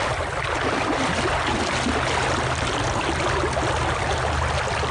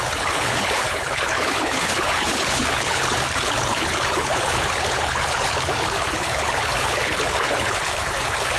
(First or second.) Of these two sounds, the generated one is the second